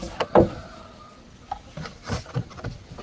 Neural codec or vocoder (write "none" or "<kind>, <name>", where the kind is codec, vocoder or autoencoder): none